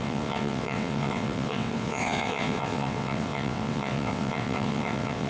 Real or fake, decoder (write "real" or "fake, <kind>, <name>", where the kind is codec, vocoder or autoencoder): fake, vocoder, WaveNeXt